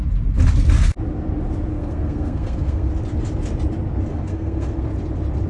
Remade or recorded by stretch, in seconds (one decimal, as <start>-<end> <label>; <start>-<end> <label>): 0.0-1.7 recorded; 1.7-2.9 remade; 2.9-4.1 recorded; 4.1-4.9 remade; 4.9-5.5 recorded